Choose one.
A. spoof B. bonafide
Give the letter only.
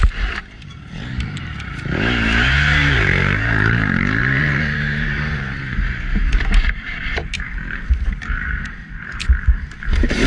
A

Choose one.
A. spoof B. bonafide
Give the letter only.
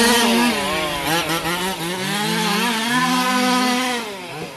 B